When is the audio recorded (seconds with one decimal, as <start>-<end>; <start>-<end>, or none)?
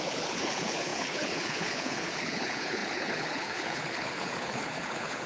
none